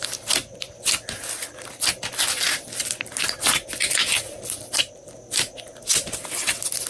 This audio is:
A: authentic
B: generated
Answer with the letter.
A